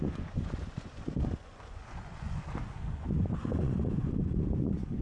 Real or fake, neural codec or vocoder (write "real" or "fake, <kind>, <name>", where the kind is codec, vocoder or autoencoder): fake, vocoder, Vocos